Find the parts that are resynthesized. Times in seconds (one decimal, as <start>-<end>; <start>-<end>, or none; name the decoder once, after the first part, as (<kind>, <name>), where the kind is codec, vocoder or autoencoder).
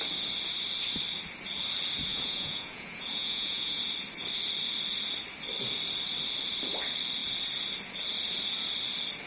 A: 2.1-3.8 (vocoder, Vocos)